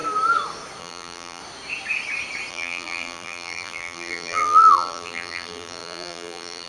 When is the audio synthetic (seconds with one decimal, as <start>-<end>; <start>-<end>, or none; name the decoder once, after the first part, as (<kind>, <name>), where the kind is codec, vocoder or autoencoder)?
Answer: 0.8-1.4 (vocoder, BigVGAN v2); 2.5-6.7